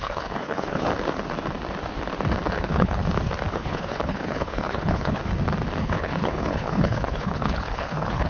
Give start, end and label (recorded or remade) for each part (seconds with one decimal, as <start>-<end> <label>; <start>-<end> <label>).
0.0-0.9 remade; 0.9-2.5 recorded; 2.5-3.0 remade; 3.0-3.5 recorded; 3.5-5.2 remade; 5.2-5.8 recorded; 5.8-8.3 remade

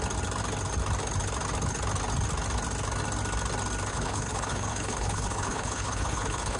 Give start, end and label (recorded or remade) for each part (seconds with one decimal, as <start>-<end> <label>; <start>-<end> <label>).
0.0-3.9 recorded; 3.9-6.6 remade

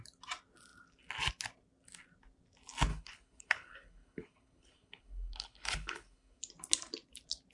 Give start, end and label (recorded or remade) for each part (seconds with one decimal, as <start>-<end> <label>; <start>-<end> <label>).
0.0-2.9 recorded; 2.9-6.4 remade; 6.4-7.5 recorded

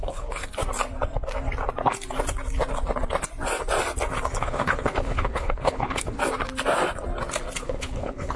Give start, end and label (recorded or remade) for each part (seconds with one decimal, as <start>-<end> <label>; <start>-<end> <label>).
0.0-0.4 remade; 0.4-4.4 recorded; 4.4-6.2 remade; 6.2-7.6 recorded; 7.6-8.4 remade

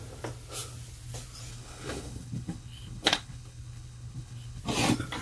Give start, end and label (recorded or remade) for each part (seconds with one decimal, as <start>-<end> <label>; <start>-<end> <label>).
0.0-1.5 recorded; 1.5-4.6 remade; 4.6-5.2 recorded

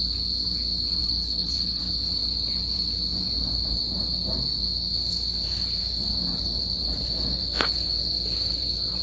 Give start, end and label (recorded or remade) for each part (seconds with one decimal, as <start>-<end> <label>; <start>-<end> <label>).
0.0-1.0 recorded; 1.0-1.8 remade; 1.8-9.0 recorded